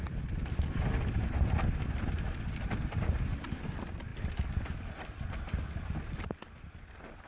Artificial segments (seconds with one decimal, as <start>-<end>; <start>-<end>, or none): none